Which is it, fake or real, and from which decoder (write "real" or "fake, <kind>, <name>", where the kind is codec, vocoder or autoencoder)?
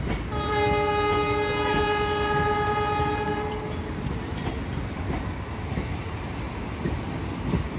real